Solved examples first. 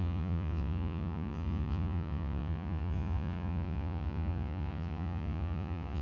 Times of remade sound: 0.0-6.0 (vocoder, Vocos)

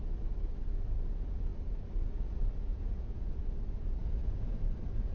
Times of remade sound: 2.7-3.3 (vocoder, Vocos); 4.0-4.6